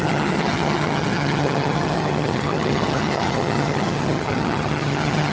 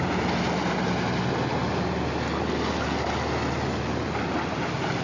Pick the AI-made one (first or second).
first